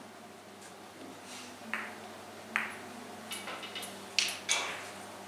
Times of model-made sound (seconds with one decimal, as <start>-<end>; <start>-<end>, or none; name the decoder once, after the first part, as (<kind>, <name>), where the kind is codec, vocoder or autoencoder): none